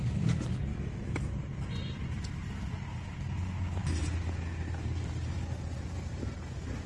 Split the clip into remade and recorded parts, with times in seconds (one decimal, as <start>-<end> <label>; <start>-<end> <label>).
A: 0.0-0.7 recorded; 0.7-1.3 remade; 1.3-6.9 recorded